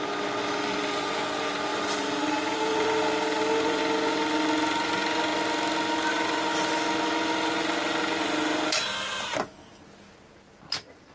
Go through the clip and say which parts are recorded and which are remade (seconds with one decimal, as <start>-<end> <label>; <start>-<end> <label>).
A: 0.0-1.7 recorded; 1.7-3.8 remade; 3.8-11.1 recorded